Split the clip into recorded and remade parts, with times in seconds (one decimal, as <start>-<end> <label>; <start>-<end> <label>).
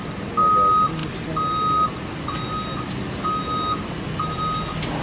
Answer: 0.0-5.0 recorded